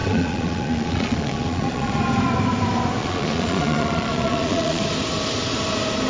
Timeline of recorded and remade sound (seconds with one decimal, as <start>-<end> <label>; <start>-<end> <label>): 0.0-2.0 remade; 2.0-3.0 recorded; 3.0-4.8 remade; 4.8-6.1 recorded